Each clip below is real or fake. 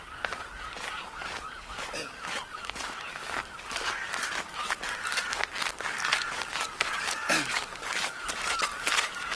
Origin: fake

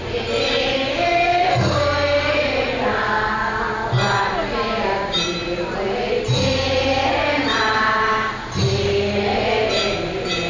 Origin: real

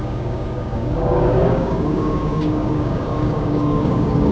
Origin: fake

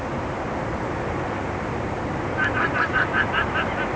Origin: real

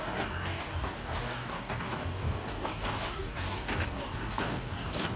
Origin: fake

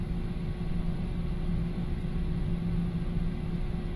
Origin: real